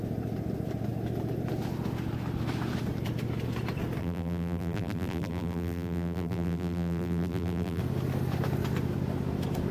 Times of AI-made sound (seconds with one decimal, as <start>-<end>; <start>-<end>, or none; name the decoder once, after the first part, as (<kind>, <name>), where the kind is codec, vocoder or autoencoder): 4.0-7.8 (vocoder, BigVGAN v2)